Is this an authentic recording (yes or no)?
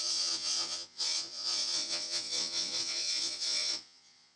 no